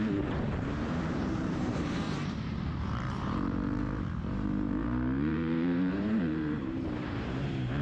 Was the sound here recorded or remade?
remade